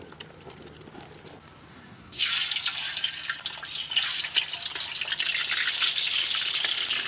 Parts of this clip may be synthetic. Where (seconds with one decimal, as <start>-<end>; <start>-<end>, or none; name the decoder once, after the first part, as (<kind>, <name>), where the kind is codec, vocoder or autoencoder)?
1.7-2.3 (codec, SNAC)